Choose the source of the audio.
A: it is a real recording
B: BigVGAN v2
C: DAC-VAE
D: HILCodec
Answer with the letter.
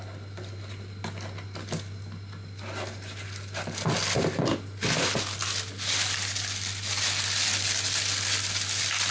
A